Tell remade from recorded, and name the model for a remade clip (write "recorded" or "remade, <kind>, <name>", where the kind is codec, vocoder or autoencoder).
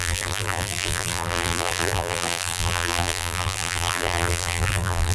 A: remade, vocoder, BigVGAN v2